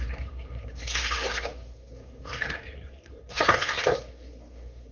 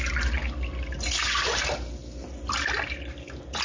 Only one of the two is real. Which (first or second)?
second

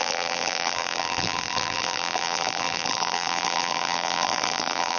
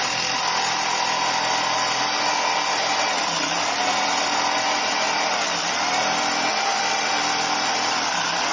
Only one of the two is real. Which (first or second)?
second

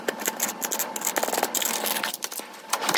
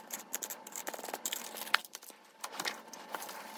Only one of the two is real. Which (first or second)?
first